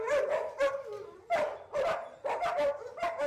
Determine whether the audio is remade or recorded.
remade